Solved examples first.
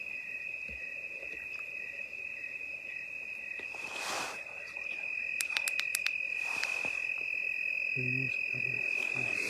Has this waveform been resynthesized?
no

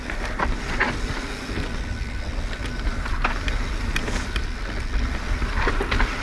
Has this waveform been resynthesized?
no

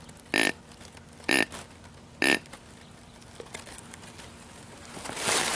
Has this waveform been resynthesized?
no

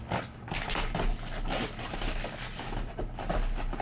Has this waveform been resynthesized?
no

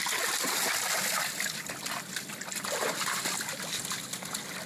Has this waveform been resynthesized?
no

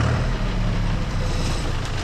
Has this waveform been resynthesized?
yes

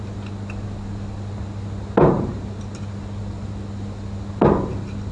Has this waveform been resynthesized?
no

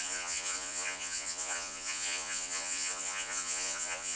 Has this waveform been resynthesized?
yes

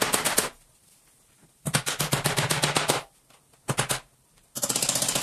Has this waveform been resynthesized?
yes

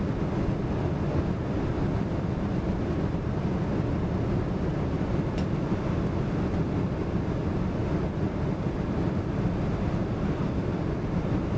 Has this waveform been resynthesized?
no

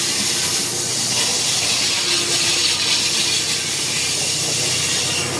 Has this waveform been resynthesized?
no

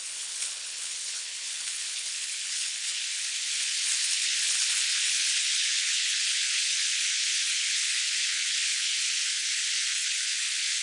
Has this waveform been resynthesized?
yes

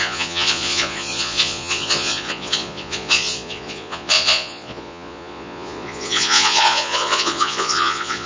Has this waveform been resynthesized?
yes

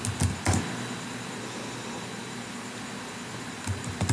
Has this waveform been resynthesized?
no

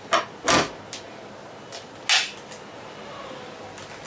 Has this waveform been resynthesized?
no